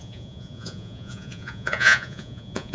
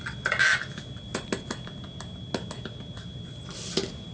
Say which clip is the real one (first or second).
second